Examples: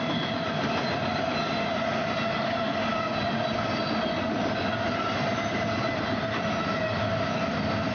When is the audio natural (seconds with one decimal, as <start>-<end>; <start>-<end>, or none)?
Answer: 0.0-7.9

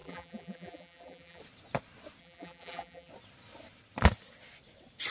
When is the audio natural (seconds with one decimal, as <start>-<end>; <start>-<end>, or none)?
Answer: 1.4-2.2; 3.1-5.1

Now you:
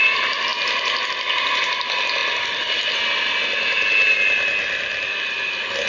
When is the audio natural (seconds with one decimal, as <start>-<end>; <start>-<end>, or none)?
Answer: 0.0-5.9

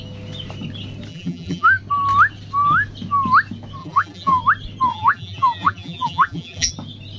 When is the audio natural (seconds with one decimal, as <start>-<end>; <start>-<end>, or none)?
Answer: 0.0-1.1; 1.8-3.8; 4.4-4.9; 6.7-7.2

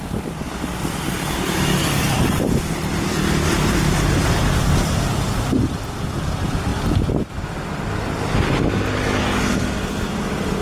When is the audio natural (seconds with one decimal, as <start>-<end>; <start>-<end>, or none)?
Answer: 6.7-9.2

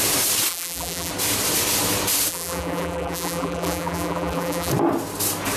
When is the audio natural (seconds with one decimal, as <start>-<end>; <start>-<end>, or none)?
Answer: 0.0-0.5; 1.1-2.3; 4.7-5.6

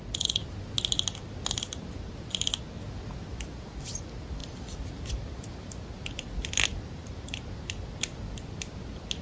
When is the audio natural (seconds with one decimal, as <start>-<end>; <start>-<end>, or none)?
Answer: 0.0-6.7; 8.3-9.2